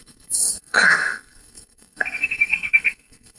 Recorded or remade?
remade